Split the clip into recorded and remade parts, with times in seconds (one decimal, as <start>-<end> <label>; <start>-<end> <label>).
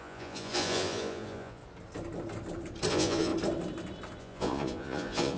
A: 0.0-1.6 remade; 1.6-2.9 recorded; 2.9-3.3 remade; 3.3-4.2 recorded; 4.2-5.4 remade